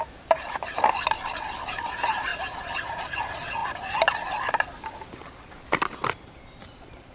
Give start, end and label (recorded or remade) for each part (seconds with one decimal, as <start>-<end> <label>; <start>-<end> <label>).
0.0-7.1 recorded